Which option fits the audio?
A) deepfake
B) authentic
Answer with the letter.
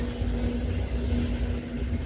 B